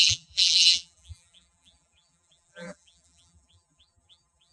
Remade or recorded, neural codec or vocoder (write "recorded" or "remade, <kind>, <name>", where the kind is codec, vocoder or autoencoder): remade, vocoder, BigVGAN v2